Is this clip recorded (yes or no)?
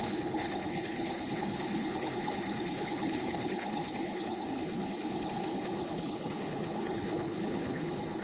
no